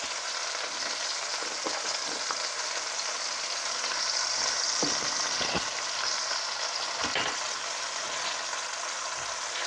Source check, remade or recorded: recorded